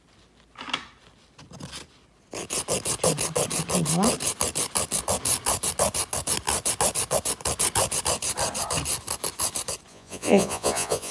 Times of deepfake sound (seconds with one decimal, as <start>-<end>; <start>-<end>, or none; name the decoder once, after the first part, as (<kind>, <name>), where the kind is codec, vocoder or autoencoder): 9.9-11.1 (vocoder, Vocos)